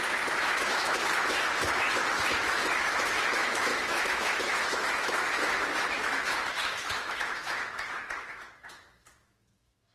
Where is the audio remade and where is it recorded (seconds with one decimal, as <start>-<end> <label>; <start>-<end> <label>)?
0.0-9.9 remade